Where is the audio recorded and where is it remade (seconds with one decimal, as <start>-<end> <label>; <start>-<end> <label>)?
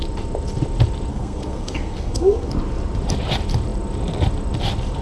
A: 0.0-1.1 recorded; 1.1-2.5 remade; 2.5-5.0 recorded